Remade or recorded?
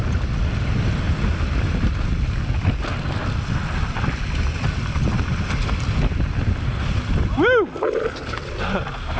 recorded